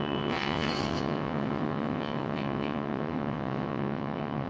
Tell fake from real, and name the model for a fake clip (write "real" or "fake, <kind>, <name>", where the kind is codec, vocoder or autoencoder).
fake, vocoder, WaveNeXt